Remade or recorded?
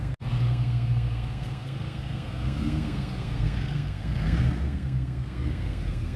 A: remade